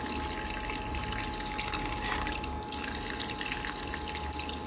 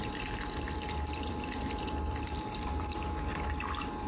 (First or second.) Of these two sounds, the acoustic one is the first